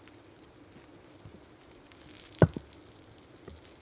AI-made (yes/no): no